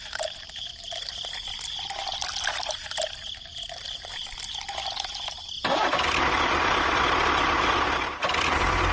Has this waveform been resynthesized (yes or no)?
yes